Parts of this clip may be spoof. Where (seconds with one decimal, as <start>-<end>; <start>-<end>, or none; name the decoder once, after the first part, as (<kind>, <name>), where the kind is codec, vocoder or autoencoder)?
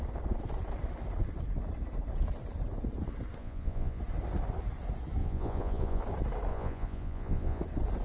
3.4-4.0 (vocoder, Vocos); 5.2-6.0; 6.5-7.6